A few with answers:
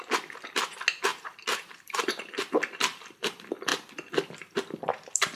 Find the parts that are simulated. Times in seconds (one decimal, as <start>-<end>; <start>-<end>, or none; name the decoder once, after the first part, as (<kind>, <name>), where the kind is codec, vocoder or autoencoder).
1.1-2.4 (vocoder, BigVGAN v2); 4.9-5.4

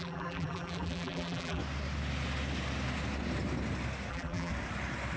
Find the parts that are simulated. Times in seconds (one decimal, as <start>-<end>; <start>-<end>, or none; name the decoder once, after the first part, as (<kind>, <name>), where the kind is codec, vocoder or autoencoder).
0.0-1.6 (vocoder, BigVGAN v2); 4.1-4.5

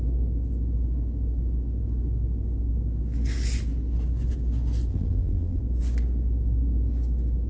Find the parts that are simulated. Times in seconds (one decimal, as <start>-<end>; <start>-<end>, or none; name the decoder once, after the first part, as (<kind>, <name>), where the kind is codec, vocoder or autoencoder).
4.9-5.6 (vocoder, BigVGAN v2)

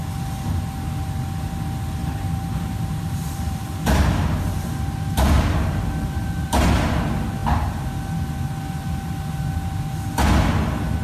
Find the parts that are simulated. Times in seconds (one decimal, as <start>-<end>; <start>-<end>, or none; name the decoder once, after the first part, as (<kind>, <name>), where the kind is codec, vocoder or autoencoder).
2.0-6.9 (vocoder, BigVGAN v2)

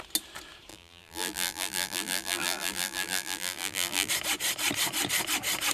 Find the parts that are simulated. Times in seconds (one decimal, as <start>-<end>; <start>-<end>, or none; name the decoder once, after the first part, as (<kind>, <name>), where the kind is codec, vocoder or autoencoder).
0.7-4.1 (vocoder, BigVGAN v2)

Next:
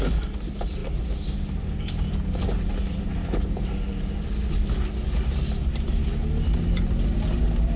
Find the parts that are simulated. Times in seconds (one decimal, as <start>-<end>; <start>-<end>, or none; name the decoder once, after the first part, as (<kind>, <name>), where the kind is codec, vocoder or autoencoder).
none

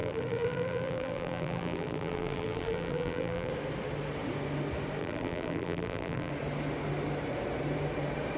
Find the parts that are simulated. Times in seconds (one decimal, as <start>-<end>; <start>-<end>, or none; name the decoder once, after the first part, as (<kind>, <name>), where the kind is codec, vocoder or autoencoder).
0.0-3.5 (vocoder, BigVGAN v2); 5.0-6.3

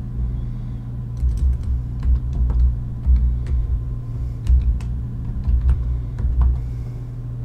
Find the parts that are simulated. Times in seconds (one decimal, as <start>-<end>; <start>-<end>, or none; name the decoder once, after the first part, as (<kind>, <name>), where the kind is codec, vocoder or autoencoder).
1.0-2.4 (vocoder, BigVGAN v2); 3.6-6.6